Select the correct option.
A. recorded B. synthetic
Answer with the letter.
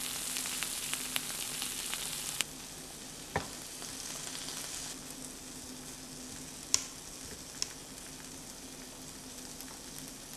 A